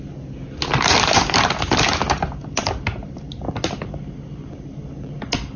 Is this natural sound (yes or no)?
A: yes